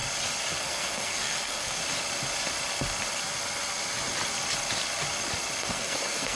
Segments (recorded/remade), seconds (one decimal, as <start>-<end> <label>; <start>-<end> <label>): 0.0-0.6 recorded; 0.6-1.8 remade; 1.8-5.6 recorded; 5.6-6.3 remade